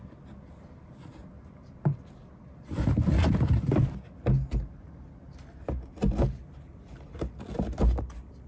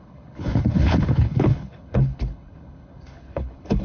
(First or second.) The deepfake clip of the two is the second